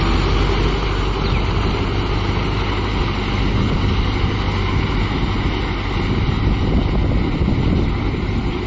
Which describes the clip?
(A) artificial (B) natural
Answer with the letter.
B